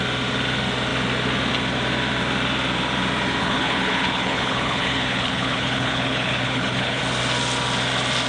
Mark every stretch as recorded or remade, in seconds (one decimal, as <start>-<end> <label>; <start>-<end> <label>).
0.0-3.4 recorded; 3.4-7.0 remade; 7.0-8.3 recorded